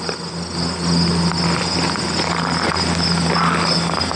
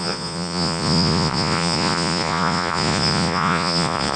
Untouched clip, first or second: first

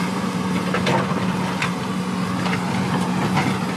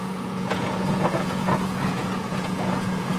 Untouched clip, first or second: first